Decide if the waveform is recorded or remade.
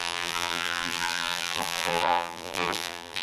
remade